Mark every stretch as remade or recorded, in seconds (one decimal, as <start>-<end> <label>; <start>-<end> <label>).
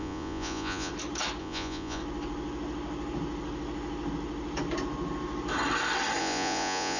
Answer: 0.0-0.9 remade; 0.9-1.4 recorded; 1.4-2.0 remade; 2.0-6.2 recorded; 6.2-7.0 remade